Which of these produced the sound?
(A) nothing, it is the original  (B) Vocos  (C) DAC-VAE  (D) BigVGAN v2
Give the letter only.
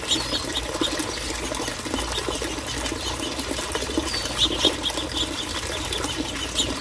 A